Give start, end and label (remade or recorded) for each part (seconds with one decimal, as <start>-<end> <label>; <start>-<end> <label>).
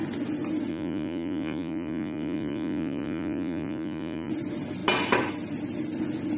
0.0-0.7 recorded; 0.7-4.3 remade; 4.3-6.4 recorded